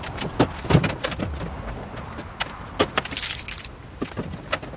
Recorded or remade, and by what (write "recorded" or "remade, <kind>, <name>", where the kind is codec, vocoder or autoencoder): recorded